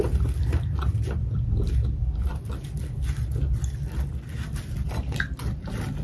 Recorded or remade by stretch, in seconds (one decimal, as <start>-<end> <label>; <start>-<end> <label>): 0.0-6.0 recorded

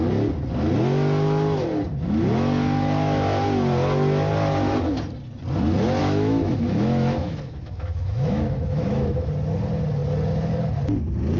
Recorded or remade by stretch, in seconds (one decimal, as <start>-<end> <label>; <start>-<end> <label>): 0.0-6.0 recorded; 6.0-9.3 remade; 9.3-11.4 recorded

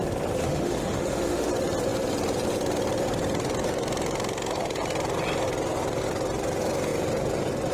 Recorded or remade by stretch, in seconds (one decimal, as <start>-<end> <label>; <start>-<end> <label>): 0.0-0.4 recorded; 0.4-1.5 remade; 1.5-7.7 recorded

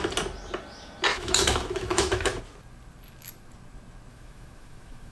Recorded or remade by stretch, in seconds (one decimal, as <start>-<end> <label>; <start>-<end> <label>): 0.0-1.1 recorded; 1.1-2.4 remade; 2.4-4.1 recorded; 4.1-5.1 remade